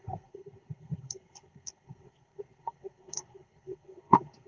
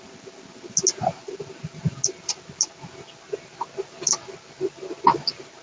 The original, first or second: second